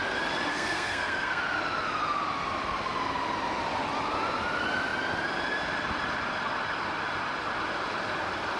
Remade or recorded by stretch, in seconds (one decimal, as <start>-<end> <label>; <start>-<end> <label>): 0.0-0.5 recorded; 0.5-1.4 remade; 1.4-8.6 recorded